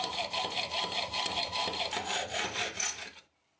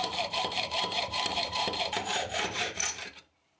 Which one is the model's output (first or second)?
second